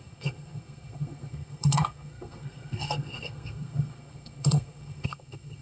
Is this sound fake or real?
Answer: fake